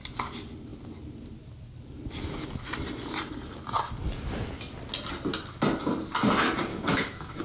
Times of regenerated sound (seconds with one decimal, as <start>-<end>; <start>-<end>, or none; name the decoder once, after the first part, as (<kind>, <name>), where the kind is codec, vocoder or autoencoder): 6.7-7.4 (autoencoder, DAC-VAE)